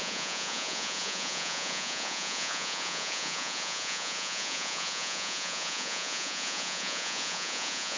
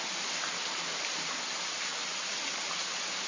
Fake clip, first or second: first